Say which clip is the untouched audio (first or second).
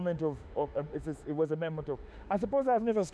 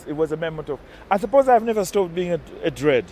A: second